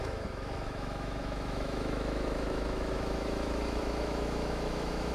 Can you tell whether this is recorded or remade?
remade